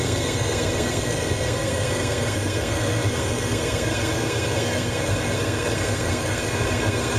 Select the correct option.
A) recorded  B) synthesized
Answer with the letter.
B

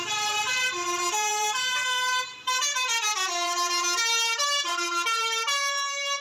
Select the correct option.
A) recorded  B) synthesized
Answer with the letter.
B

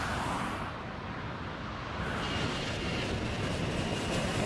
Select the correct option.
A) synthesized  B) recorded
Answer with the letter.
B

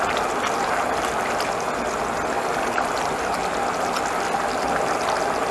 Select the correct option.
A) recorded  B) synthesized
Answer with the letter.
A